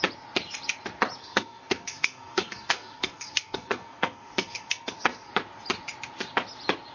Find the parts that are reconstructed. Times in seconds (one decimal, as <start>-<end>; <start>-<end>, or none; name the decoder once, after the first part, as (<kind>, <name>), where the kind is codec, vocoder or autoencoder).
1.2-5.3 (codec, SNAC)